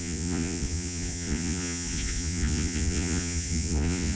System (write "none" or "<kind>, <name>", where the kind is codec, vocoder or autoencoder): vocoder, Vocos